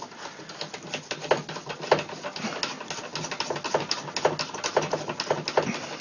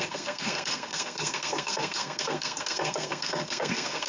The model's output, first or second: second